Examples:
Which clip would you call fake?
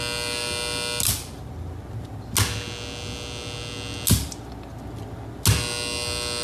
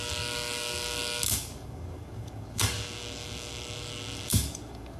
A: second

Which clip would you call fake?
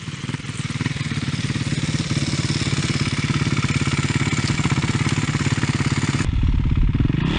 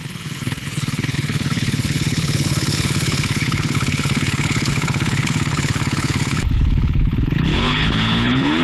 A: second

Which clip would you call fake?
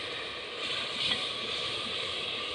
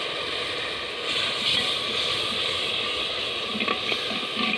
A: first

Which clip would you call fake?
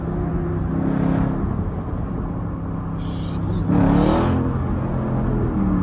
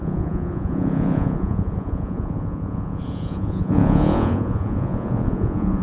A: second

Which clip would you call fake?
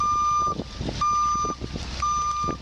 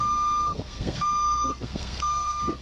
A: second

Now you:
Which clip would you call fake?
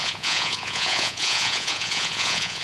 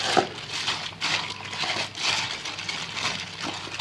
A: first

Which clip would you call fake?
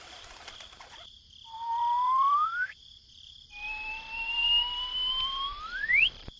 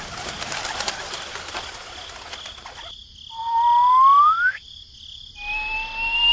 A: first